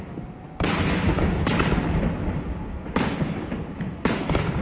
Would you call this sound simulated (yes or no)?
no